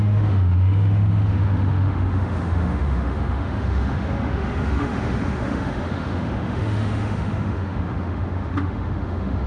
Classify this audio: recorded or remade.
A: remade